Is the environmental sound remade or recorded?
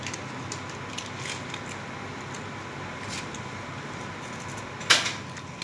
recorded